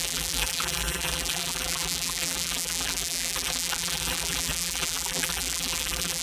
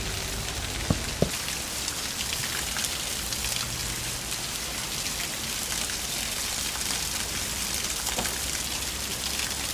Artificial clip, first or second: first